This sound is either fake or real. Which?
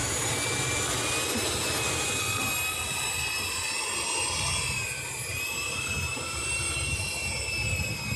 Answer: real